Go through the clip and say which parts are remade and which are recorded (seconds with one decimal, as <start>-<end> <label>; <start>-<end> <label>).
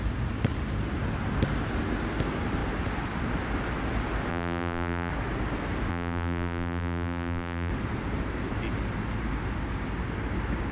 0.0-4.3 recorded; 4.3-5.1 remade; 5.1-5.9 recorded; 5.9-7.7 remade; 7.7-10.7 recorded